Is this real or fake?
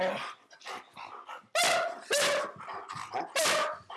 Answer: real